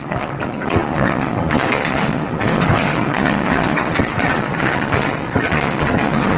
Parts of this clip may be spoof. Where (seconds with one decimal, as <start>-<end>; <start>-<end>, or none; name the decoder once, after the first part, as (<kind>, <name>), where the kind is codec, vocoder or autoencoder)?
0.0-6.4 (vocoder, Vocos)

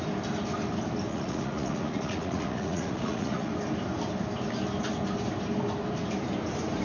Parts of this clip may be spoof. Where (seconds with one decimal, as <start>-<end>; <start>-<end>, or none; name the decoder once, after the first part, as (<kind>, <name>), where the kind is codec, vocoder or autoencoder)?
1.1-3.5 (vocoder, Vocos)